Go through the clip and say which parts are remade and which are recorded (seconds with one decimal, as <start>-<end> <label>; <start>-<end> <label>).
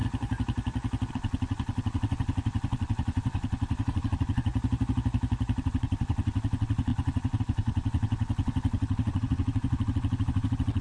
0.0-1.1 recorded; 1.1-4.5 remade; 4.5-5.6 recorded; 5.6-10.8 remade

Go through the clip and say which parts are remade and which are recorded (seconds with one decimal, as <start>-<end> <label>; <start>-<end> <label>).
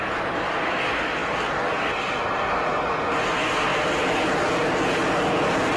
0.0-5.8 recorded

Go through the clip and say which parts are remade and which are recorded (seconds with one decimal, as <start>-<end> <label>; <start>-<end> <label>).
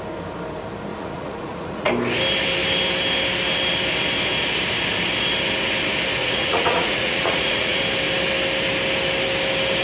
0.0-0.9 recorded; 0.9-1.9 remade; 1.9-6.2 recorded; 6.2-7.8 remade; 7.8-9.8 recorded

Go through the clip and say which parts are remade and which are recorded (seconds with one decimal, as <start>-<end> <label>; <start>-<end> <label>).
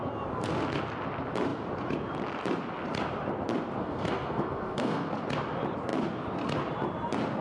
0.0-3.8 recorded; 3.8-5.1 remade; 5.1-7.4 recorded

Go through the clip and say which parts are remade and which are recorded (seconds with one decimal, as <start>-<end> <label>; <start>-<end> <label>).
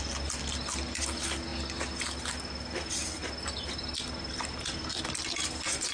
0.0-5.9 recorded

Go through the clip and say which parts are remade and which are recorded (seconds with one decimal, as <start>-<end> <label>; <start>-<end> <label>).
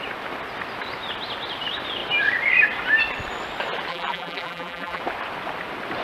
0.0-3.9 recorded; 3.9-5.0 remade; 5.0-6.0 recorded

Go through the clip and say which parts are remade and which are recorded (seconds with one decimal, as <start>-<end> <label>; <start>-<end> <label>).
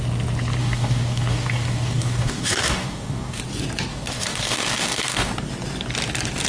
0.0-0.6 recorded; 0.6-3.4 remade; 3.4-3.9 recorded; 3.9-5.3 remade; 5.3-6.5 recorded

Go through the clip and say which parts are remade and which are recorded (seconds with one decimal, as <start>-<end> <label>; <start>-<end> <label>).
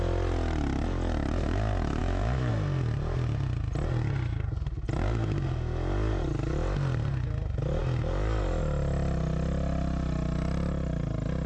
0.0-2.0 recorded; 2.0-2.5 remade; 2.5-11.5 recorded